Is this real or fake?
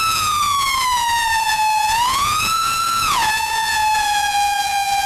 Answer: fake